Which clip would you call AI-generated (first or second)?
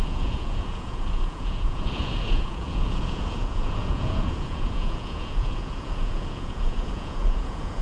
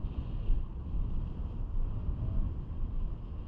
first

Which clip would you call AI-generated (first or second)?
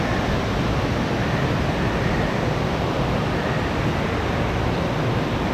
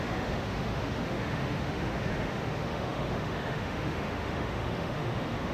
second